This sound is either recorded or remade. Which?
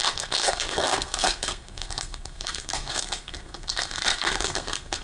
remade